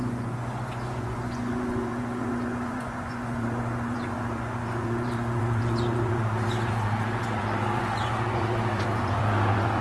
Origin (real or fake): fake